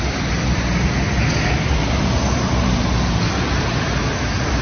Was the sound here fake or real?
real